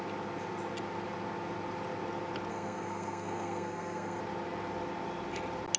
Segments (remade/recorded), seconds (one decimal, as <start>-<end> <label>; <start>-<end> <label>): 0.0-2.5 recorded; 2.5-4.2 remade; 4.2-5.8 recorded